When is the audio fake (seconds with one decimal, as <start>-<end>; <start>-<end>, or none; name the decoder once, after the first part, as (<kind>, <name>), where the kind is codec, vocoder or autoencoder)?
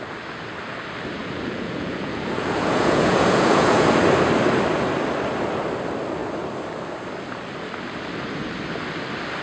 1.2-4.0 (vocoder, Vocos)